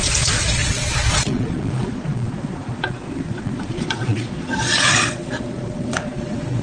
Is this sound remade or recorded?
remade